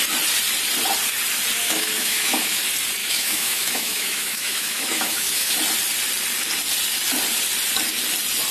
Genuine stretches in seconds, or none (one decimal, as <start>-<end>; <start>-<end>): 0.0-1.6; 2.6-3.0; 5.5-8.5